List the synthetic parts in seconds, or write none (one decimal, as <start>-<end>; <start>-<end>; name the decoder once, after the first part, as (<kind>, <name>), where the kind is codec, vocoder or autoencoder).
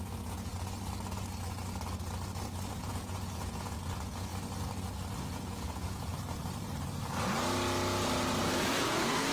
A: 0.0-0.5 (vocoder, Vocos); 2.8-4.3; 5.2-6.1; 8.6-9.3